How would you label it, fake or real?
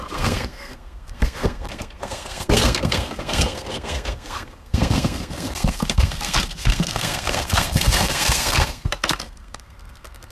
fake